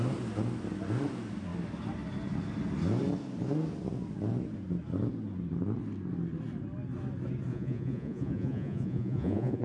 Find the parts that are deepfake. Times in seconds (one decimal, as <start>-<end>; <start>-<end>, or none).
7.5-9.6